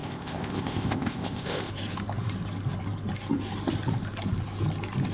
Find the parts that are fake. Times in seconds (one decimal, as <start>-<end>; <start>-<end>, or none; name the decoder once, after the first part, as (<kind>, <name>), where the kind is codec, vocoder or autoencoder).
0.0-1.7 (codec, ZipCodec)